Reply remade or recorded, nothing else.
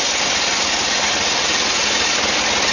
recorded